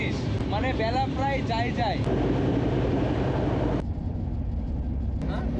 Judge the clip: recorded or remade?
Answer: recorded